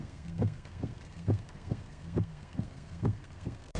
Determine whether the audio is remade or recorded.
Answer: remade